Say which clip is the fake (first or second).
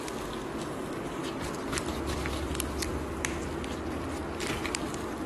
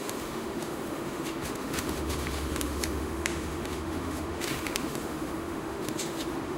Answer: second